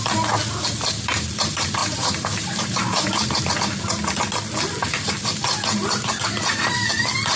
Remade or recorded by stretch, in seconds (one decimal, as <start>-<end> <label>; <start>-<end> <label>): 0.0-1.8 recorded; 1.8-2.8 remade; 2.8-7.4 recorded